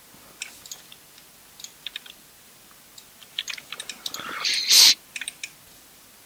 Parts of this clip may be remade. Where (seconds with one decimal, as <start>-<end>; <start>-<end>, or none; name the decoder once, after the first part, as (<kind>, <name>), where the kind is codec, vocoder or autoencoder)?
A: none